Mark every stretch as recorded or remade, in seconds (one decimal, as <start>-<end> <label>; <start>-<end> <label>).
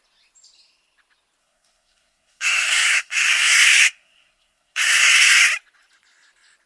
0.0-1.4 recorded; 1.4-5.4 remade; 5.4-6.7 recorded